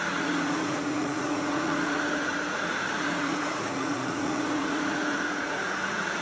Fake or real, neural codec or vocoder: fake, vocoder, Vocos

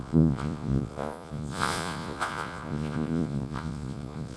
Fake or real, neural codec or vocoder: fake, vocoder, Vocos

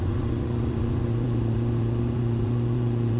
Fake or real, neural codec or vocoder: fake, vocoder, Vocos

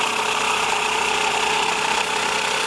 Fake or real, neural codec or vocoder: fake, vocoder, Vocos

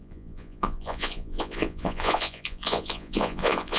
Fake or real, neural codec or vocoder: fake, vocoder, Vocos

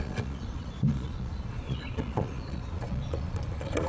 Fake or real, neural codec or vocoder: fake, vocoder, Vocos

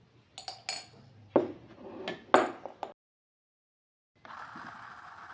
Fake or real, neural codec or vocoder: real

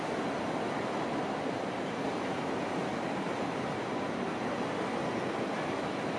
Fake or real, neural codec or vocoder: real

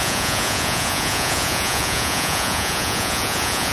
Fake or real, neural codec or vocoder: fake, vocoder, Vocos